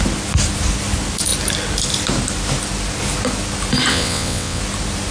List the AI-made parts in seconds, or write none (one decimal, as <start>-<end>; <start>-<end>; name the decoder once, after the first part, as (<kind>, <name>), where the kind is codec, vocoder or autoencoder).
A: 3.9-4.6 (vocoder, WaveNeXt)